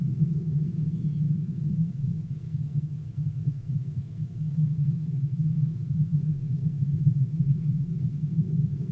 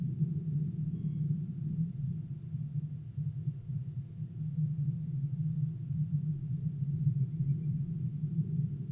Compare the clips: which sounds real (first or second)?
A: second